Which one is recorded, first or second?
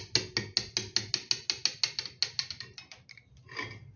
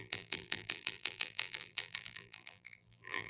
first